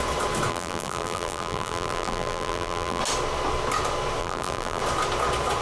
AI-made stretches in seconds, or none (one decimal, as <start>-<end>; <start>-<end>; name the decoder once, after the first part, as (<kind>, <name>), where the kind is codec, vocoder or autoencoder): 0.5-3.0 (vocoder, BigVGAN v2); 4.2-4.8